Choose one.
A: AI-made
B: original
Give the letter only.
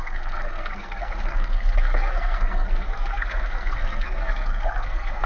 A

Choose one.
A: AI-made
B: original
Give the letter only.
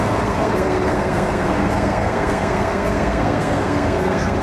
A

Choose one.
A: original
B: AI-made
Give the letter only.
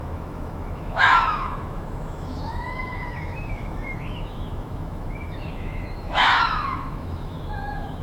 B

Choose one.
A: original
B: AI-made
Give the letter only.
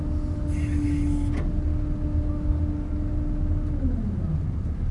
A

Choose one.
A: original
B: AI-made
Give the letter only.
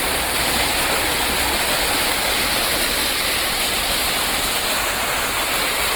A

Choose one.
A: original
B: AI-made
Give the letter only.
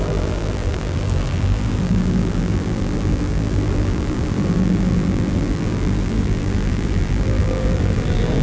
B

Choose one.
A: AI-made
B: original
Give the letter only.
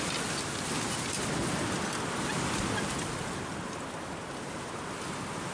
B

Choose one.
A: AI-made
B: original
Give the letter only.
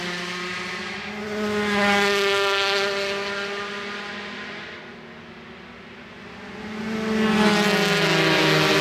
B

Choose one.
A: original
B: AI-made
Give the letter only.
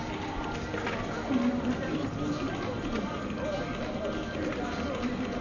A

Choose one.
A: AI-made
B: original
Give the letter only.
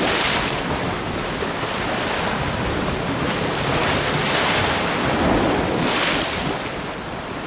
B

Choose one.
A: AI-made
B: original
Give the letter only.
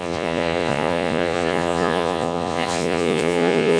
A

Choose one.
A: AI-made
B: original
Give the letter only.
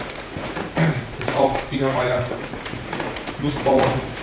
A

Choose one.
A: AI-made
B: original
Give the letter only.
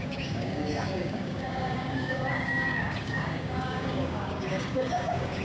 A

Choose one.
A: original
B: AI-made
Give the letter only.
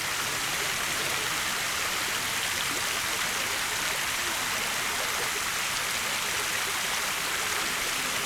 A